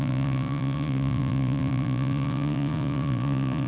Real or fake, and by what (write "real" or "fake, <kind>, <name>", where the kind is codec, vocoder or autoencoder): fake, vocoder, Vocos